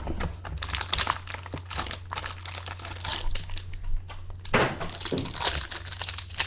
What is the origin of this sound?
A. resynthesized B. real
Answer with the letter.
B